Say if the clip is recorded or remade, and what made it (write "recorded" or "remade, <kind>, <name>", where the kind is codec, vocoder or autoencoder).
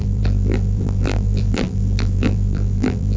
remade, vocoder, BigVGAN v2